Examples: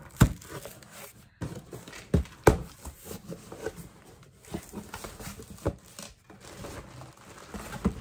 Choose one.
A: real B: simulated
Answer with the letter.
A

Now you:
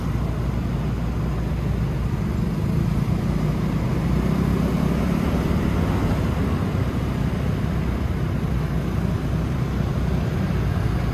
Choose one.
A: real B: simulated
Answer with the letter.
A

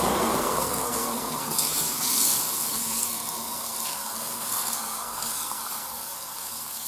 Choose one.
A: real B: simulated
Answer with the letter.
B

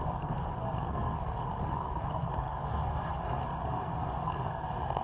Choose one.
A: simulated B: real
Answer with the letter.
A